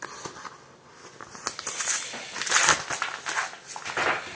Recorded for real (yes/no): yes